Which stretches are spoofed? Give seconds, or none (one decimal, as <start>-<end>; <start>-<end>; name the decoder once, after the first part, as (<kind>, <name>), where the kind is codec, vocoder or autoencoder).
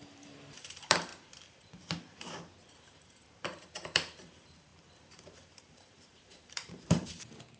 0.0-1.1 (vocoder, BigVGAN v2); 2.9-7.6